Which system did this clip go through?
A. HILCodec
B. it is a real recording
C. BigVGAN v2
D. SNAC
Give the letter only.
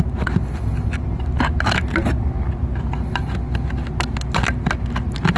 B